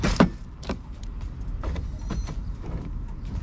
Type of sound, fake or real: fake